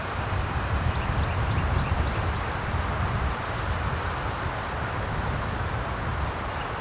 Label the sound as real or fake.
real